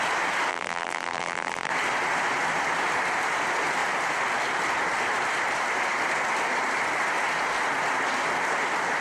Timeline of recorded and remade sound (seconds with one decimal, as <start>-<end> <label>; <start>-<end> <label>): 0.0-0.5 recorded; 0.5-1.7 remade; 1.7-9.0 recorded